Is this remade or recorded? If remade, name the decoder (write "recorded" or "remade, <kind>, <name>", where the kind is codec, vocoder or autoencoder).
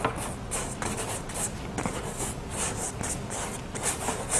recorded